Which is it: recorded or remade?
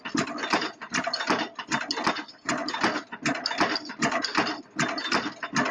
recorded